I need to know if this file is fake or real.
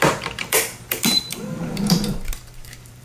fake